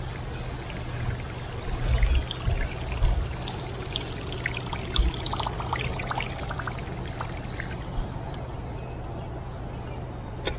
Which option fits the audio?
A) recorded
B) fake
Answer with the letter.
A